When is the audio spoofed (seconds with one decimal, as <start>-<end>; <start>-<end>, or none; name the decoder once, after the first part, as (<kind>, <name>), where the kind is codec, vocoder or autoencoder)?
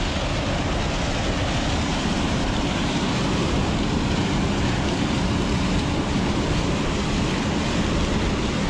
1.9-6.1 (vocoder, BigVGAN v2)